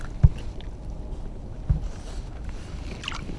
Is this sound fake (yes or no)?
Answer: no